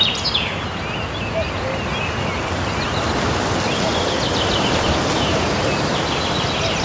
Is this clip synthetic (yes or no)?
no